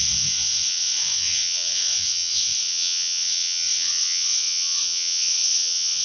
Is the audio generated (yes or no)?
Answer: yes